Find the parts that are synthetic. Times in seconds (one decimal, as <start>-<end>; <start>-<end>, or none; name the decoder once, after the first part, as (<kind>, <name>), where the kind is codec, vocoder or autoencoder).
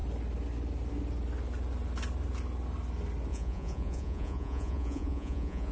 3.3-5.7 (vocoder, Vocos)